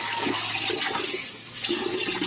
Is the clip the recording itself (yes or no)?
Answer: yes